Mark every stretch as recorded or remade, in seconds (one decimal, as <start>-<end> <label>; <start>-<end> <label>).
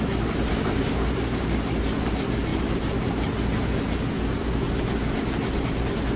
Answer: 0.0-0.5 recorded; 0.5-1.7 remade; 1.7-6.2 recorded